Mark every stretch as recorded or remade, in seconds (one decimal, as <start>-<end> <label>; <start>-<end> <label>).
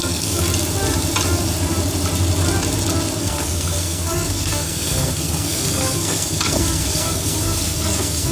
0.0-0.5 remade; 0.5-3.2 recorded; 3.2-8.3 remade